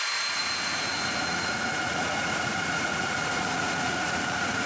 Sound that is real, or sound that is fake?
fake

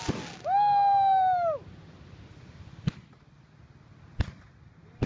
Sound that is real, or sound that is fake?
real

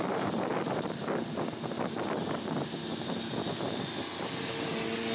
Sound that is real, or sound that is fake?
real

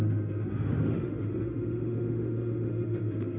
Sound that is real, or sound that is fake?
fake